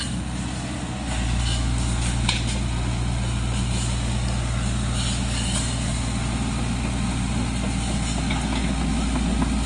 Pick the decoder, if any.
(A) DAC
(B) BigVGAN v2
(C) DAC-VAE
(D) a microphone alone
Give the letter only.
D